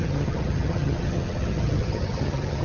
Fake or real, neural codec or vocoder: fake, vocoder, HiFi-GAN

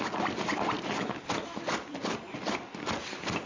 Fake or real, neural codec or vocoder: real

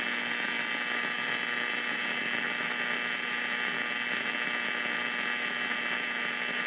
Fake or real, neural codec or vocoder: real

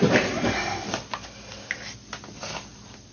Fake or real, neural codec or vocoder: real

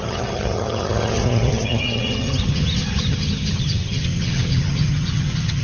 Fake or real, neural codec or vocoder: fake, vocoder, HiFi-GAN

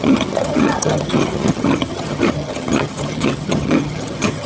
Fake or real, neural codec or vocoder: fake, vocoder, HiFi-GAN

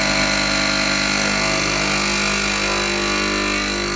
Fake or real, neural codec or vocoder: real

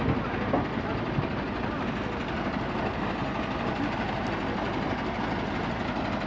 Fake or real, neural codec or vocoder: real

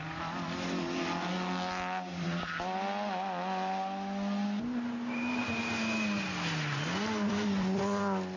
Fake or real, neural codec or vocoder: real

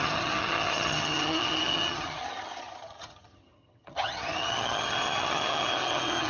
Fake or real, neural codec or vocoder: fake, vocoder, HiFi-GAN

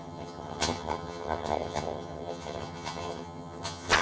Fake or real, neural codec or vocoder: fake, vocoder, HiFi-GAN